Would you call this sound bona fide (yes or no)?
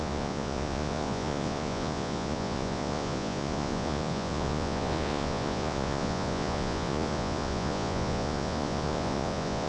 no